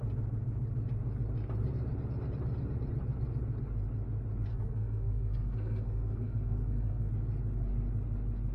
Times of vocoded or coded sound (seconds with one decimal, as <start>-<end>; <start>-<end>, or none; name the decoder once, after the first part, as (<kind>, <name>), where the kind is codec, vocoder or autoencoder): 4.5-7.1 (codec, SNAC)